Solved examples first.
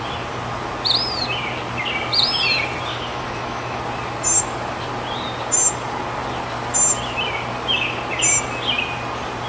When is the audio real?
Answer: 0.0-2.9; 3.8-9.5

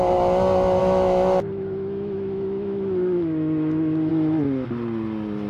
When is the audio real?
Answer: 0.0-0.8; 4.1-5.5